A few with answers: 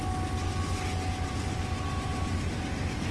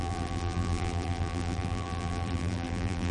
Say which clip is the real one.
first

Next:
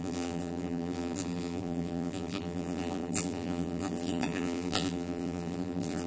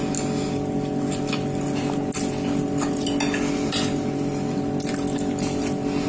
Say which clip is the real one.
second